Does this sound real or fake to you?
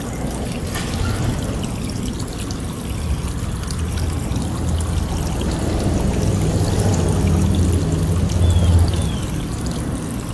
real